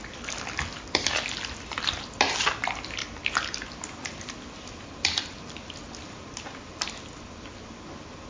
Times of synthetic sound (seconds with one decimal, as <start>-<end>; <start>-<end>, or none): none